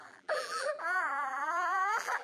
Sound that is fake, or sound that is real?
fake